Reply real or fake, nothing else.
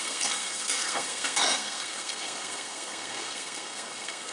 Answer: fake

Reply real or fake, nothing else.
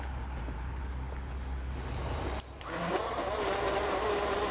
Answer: real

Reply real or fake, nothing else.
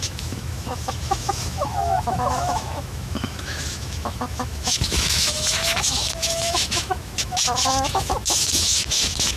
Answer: fake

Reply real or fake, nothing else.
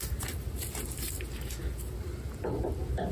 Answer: real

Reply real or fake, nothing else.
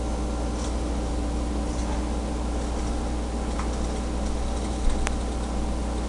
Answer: real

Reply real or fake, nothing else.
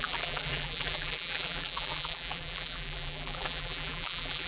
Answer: fake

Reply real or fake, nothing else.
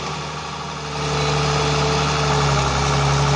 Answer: real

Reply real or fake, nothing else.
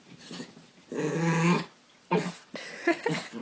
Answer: real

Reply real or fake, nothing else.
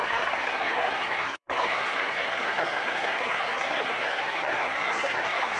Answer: fake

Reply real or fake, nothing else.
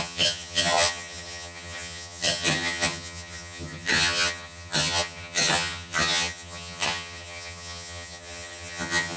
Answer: fake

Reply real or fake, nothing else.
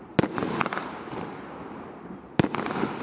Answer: real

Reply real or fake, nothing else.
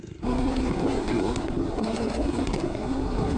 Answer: fake